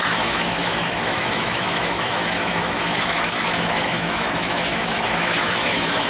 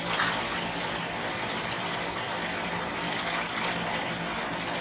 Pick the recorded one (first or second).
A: second